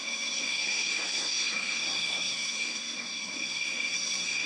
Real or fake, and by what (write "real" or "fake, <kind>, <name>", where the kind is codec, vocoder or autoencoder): fake, codec, SNAC